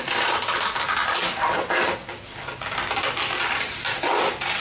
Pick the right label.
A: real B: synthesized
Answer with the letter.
A